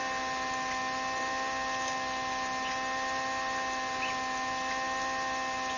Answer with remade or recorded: recorded